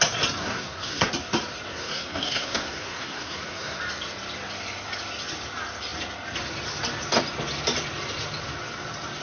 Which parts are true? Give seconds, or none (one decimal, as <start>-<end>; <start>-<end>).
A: 0.0-0.4; 1.1-1.7; 3.8-9.2